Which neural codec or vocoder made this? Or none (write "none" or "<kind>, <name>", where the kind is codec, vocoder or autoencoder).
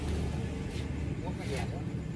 none